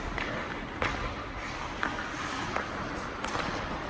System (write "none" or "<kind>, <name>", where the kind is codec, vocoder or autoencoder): vocoder, BigVGAN v2